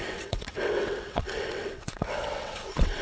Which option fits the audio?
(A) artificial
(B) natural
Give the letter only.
A